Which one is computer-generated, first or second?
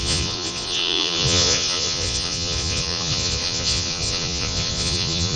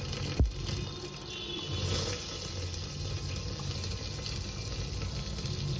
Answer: first